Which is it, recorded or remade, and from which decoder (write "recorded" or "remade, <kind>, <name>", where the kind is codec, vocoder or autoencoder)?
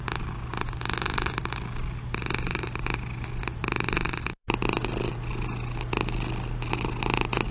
recorded